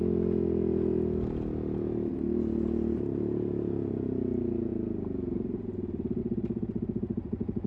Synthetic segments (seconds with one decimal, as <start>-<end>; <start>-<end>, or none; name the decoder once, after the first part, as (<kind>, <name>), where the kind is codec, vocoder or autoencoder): none